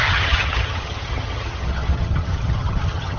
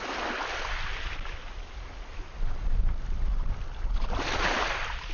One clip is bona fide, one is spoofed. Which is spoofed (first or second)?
first